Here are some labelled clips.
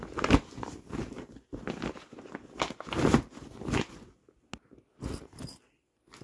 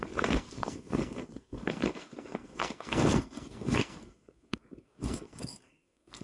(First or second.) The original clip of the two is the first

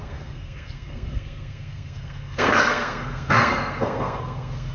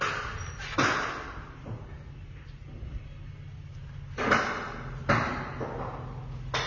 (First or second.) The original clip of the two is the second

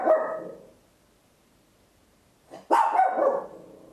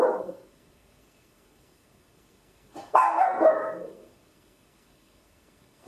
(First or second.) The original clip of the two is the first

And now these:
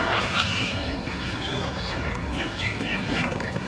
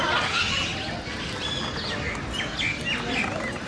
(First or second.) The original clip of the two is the second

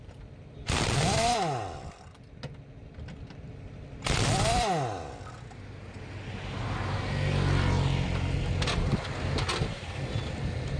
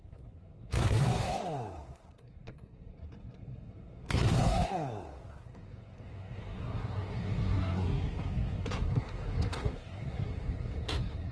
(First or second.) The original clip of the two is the first